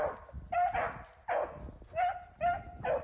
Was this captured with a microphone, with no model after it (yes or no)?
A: yes